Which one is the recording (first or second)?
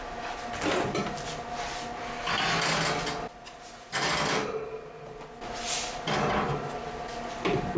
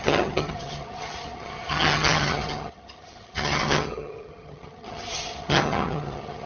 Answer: first